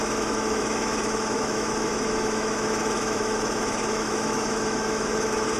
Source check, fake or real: fake